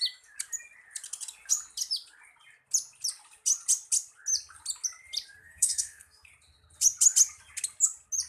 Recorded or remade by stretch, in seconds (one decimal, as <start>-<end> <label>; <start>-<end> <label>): 0.0-5.4 recorded; 5.4-6.3 remade; 6.3-8.3 recorded